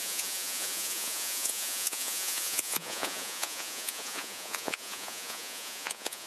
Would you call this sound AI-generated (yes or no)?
yes